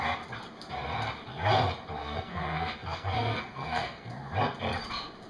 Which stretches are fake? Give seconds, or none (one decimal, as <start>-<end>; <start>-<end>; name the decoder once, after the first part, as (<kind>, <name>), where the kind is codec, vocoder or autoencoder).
2.0-4.1 (codec, SNAC)